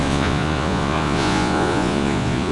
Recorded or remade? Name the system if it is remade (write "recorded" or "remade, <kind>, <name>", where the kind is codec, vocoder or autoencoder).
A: remade, vocoder, Vocos